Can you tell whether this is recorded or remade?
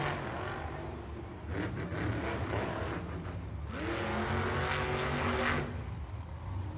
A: recorded